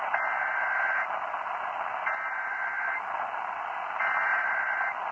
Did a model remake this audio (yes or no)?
no